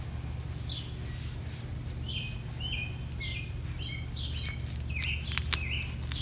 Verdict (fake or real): real